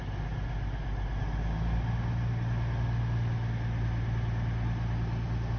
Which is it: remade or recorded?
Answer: recorded